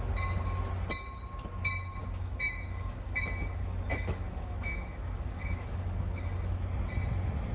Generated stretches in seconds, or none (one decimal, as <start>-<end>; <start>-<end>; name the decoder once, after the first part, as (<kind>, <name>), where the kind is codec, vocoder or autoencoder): 2.0-3.3 (autoencoder, DAC-VAE); 3.9-6.6

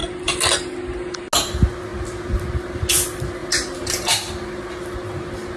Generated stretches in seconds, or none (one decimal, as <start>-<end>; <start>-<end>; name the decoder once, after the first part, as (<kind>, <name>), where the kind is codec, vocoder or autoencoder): none

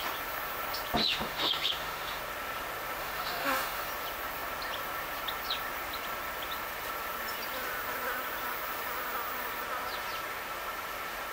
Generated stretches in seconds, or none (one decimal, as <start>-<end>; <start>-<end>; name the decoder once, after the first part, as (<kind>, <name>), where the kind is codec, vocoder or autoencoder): 1.0-2.2 (autoencoder, DAC-VAE); 3.0-3.9

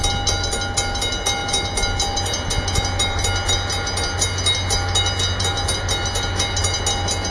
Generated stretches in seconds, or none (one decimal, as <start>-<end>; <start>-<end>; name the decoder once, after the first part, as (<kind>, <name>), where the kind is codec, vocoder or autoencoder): none

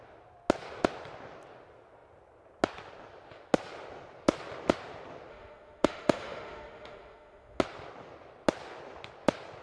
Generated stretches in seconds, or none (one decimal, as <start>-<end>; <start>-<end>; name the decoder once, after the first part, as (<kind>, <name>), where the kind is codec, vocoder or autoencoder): 5.3-7.6 (autoencoder, DAC-VAE)

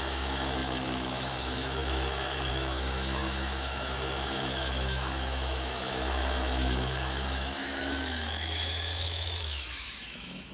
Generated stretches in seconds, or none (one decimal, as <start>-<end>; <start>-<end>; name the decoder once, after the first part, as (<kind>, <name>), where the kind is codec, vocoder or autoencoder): 0.0-10.5 (autoencoder, DAC-VAE)

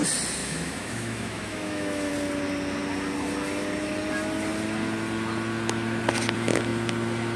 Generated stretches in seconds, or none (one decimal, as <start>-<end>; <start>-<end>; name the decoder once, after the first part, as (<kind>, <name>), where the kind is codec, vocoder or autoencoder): 0.4-2.1 (autoencoder, DAC-VAE)

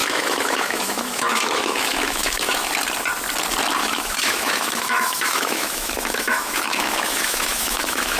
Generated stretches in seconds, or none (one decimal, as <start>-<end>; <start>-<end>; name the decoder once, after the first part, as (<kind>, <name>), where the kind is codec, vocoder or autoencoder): 0.0-2.7 (autoencoder, DAC-VAE); 3.8-8.2